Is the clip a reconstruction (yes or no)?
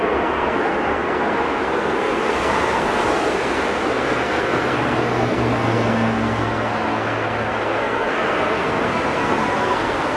yes